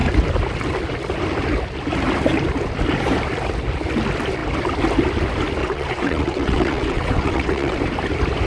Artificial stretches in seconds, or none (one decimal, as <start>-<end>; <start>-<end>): 5.6-7.8